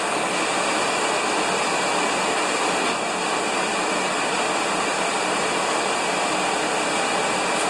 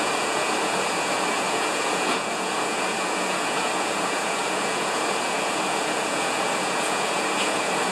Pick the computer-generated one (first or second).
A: second